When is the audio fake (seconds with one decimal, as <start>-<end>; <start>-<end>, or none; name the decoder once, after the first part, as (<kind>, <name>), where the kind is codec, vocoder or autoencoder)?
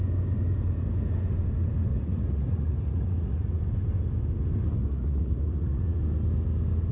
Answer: 1.9-3.6 (vocoder, Vocos); 4.9-6.0